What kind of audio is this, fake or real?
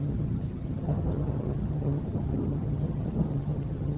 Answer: fake